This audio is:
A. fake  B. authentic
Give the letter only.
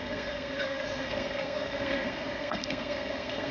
A